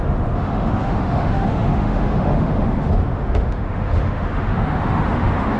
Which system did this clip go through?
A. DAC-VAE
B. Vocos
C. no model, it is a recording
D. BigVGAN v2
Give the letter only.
A